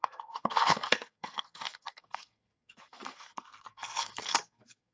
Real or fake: fake